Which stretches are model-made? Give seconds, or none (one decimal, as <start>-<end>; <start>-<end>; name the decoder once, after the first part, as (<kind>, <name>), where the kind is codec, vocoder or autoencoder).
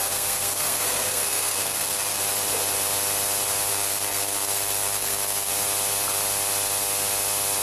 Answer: 0.0-2.2 (codec, SNAC); 3.7-5.5